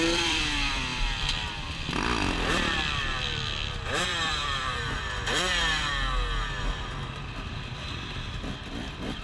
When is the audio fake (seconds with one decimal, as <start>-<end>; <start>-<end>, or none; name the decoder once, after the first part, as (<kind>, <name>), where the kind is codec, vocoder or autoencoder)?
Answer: 0.0-5.9 (vocoder, BigVGAN v2); 6.6-9.2